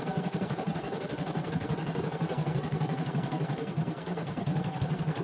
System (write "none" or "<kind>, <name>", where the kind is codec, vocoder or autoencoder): codec, SNAC